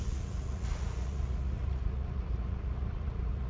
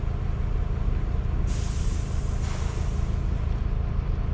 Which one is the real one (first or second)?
second